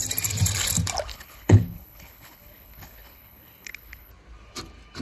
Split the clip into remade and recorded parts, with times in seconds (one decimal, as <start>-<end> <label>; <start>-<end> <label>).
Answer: 0.0-1.1 recorded; 1.1-4.1 remade; 4.1-5.0 recorded